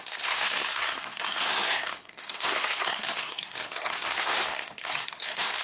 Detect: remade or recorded remade